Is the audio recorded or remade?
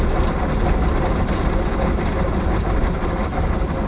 recorded